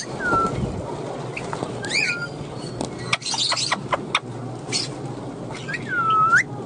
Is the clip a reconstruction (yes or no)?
no